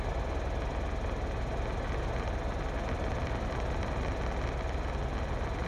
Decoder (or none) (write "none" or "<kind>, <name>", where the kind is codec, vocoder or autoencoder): none